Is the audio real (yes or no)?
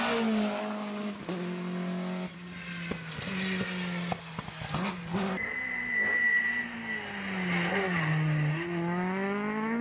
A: yes